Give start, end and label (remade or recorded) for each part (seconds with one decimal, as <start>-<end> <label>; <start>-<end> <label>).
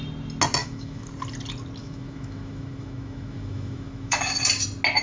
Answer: 0.0-0.6 recorded; 0.6-1.1 remade; 1.1-1.8 recorded; 1.8-4.2 remade; 4.2-5.0 recorded